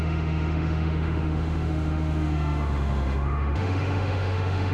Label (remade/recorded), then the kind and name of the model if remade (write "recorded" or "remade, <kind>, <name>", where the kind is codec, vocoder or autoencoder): remade, autoencoder, DAC-VAE